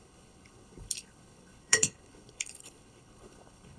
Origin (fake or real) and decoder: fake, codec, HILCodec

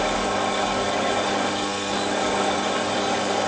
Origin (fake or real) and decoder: fake, codec, DAC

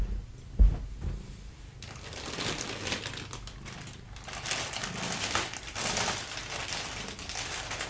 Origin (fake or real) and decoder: real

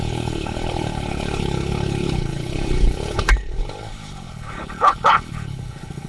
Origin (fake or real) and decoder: fake, codec, HILCodec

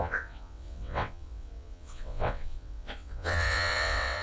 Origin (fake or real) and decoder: fake, vocoder, WaveNeXt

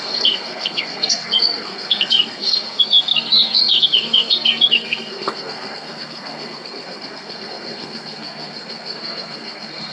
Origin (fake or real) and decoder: fake, codec, SNAC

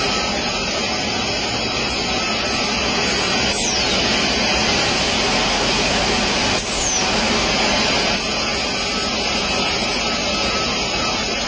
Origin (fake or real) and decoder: real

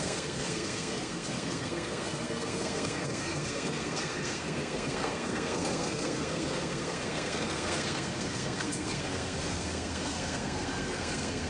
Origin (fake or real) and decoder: fake, codec, SNAC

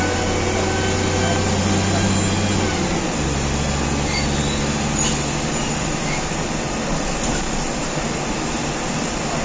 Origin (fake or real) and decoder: real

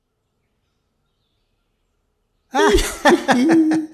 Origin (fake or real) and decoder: real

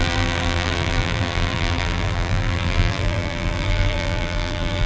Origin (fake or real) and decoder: fake, vocoder, BigVGAN v2